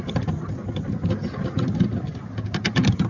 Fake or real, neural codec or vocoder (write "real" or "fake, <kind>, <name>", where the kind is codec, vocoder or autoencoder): real